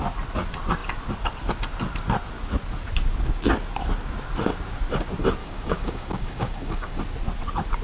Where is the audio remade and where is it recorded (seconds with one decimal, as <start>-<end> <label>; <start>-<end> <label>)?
0.0-5.4 recorded; 5.4-7.0 remade; 7.0-7.8 recorded